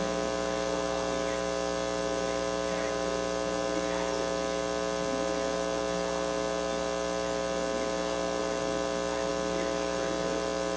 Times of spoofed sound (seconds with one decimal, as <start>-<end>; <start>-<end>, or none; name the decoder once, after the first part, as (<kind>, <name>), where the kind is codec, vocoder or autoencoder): none